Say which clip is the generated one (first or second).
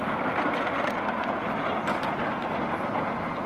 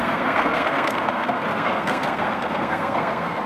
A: second